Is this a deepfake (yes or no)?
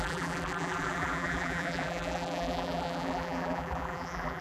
yes